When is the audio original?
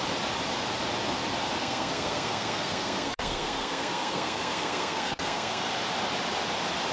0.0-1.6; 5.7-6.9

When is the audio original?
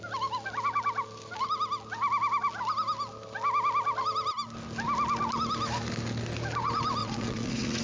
0.0-7.0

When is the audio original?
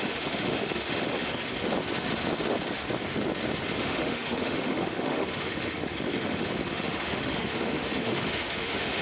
1.3-3.8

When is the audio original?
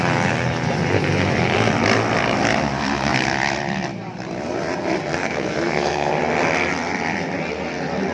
0.0-5.2; 6.1-8.1